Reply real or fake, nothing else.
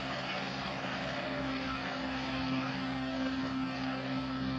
fake